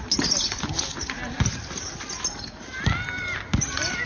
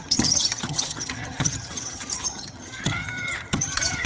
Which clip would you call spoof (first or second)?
second